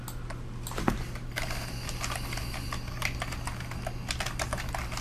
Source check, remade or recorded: recorded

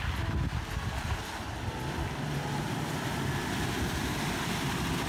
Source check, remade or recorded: recorded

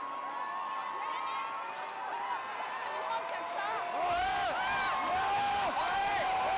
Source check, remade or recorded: recorded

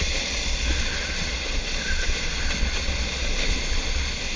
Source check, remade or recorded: recorded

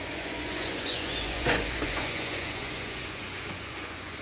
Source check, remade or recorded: remade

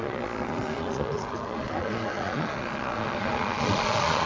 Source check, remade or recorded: remade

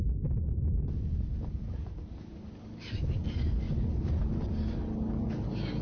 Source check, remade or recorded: recorded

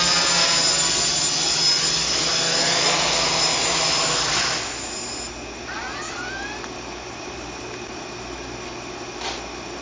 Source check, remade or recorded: recorded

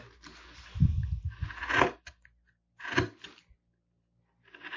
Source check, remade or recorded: recorded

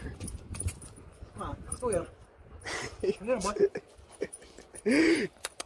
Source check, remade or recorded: remade